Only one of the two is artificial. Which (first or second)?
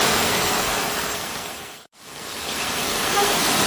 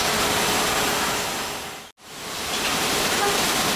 first